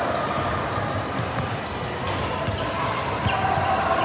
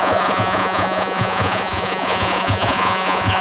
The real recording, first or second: first